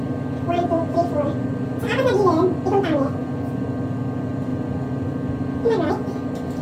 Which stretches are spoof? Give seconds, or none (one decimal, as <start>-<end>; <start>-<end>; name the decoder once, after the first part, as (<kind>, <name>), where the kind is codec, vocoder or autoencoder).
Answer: 0.0-1.9 (vocoder, BigVGAN v2); 3.2-6.6